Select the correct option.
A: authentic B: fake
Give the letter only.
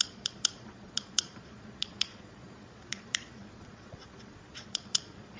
B